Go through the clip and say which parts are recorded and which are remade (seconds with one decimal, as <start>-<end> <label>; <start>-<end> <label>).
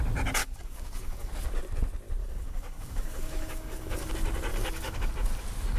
0.0-0.4 recorded; 0.4-1.3 remade; 1.3-2.2 recorded; 2.2-4.1 remade; 4.1-4.5 recorded; 4.5-5.1 remade; 5.1-5.8 recorded